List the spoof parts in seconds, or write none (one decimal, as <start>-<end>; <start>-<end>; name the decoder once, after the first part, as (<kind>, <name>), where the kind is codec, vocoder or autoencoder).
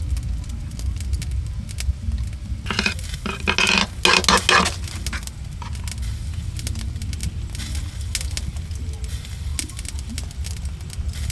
none